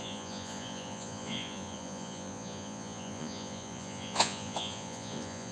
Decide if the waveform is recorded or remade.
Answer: remade